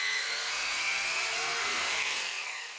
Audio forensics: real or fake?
fake